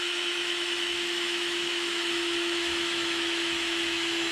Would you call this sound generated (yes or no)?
yes